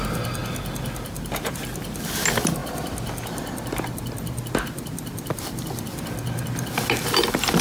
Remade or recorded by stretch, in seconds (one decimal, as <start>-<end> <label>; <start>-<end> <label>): 0.0-7.6 recorded